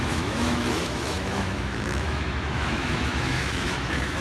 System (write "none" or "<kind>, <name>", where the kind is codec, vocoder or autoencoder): autoencoder, DAC-VAE